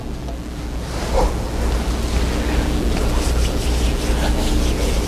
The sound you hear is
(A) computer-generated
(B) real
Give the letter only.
B